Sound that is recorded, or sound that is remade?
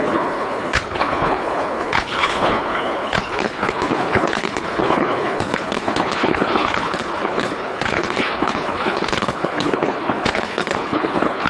remade